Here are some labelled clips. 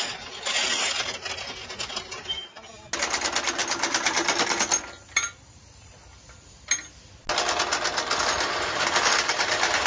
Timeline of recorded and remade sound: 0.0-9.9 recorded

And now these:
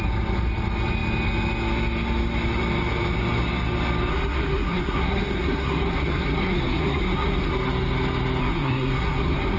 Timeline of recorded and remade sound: 0.0-4.1 recorded; 4.1-7.5 remade; 7.5-8.4 recorded; 8.4-9.6 remade

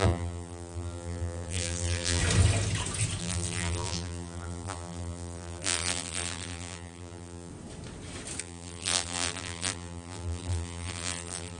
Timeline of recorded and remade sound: 0.0-2.2 remade; 2.2-3.2 recorded; 3.2-7.5 remade; 7.5-8.4 recorded; 8.4-11.6 remade

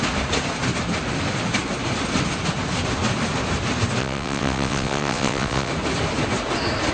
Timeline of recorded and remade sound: 0.0-4.0 recorded; 4.0-5.7 remade; 5.7-6.9 recorded

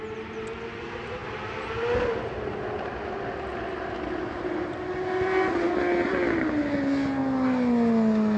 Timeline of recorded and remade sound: 0.0-8.4 recorded

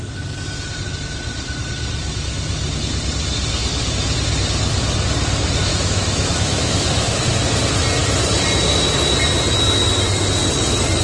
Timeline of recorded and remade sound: 0.0-5.7 recorded; 5.7-7.2 remade; 7.2-11.0 recorded

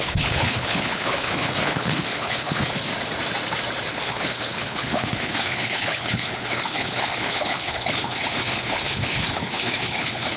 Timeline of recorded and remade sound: 0.0-2.9 remade; 2.9-3.9 recorded; 3.9-10.4 remade

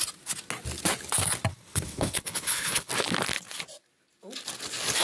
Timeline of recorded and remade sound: 0.0-1.5 recorded; 1.5-2.9 remade; 2.9-5.0 recorded